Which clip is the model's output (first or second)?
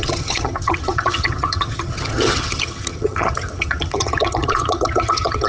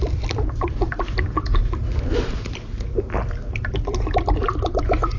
first